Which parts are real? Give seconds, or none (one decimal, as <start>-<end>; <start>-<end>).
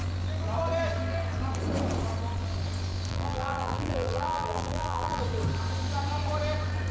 0.0-3.1; 5.2-6.9